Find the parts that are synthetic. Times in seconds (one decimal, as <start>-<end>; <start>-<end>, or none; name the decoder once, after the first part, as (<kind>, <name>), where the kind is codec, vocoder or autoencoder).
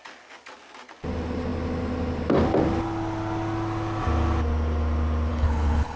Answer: 5.3-6.0 (codec, HILCodec)